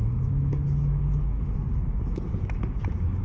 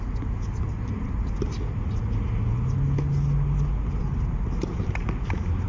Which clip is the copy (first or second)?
first